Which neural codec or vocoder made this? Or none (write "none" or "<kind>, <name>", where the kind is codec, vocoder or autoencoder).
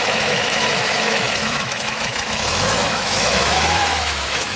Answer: autoencoder, DAC-VAE